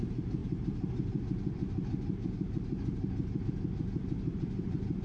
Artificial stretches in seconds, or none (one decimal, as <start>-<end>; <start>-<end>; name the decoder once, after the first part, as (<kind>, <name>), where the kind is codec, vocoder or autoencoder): 0.0-5.0 (vocoder, BigVGAN v2)